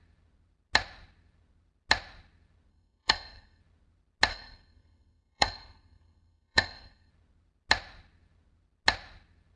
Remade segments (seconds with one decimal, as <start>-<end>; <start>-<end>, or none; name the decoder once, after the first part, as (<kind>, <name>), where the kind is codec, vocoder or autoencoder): 2.7-3.6 (codec, SNAC); 4.3-7.1